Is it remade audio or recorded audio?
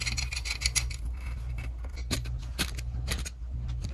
recorded